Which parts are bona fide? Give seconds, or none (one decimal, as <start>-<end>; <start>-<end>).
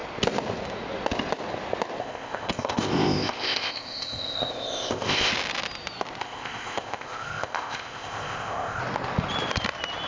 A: 0.0-2.0; 5.3-6.2; 8.8-10.1